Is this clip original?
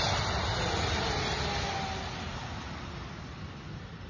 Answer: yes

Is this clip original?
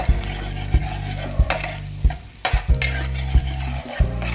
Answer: yes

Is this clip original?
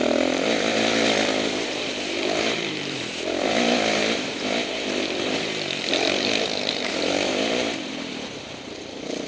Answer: no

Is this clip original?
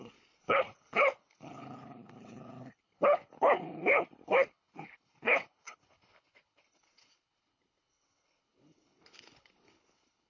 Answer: no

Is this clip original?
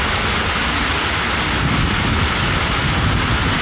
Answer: yes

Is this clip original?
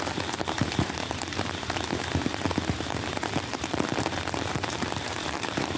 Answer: no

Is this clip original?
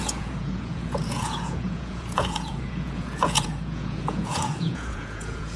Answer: no